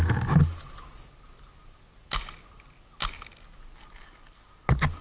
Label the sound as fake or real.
real